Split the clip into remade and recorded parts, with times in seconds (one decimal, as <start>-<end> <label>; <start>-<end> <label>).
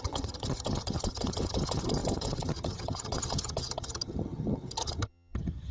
0.0-5.7 remade